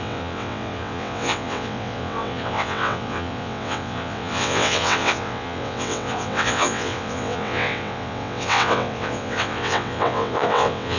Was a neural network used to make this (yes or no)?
yes